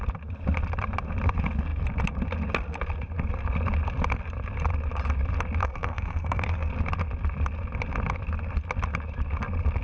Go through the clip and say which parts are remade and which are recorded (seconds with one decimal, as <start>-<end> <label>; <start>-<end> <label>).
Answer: 0.0-5.6 recorded; 5.6-6.7 remade; 6.7-9.8 recorded

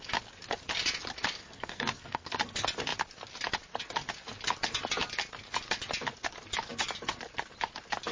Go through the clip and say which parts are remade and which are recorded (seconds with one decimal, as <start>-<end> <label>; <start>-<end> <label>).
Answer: 0.0-1.4 recorded; 1.4-2.3 remade; 2.3-8.1 recorded

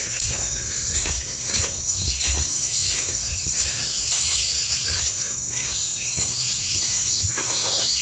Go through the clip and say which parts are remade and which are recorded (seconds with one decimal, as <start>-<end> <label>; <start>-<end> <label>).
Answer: 0.0-8.0 remade

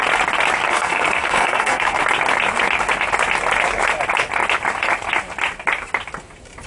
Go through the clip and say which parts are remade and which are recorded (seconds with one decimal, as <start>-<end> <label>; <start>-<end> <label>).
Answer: 0.0-0.7 recorded; 0.7-2.0 remade; 2.0-6.7 recorded

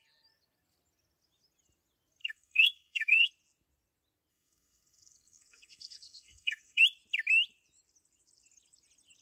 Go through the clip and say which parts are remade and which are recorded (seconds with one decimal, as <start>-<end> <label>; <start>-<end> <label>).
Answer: 0.0-2.2 recorded; 2.2-3.3 remade; 3.3-4.3 recorded; 4.3-6.8 remade; 6.8-9.2 recorded

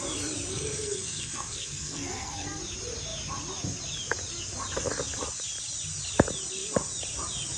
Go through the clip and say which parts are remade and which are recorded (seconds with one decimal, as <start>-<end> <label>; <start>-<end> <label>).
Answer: 0.0-0.5 recorded; 0.5-2.6 remade; 2.6-7.6 recorded

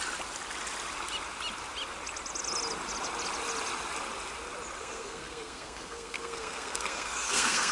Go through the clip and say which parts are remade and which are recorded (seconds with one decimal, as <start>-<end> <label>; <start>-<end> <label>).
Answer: 0.0-4.8 recorded; 4.8-7.7 remade

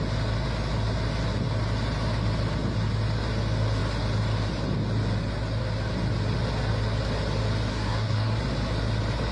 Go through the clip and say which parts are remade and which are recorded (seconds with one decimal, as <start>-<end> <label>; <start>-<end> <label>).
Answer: 0.0-7.7 recorded; 7.7-8.4 remade; 8.4-9.3 recorded